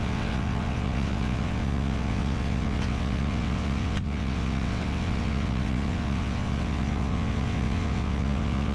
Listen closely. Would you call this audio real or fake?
fake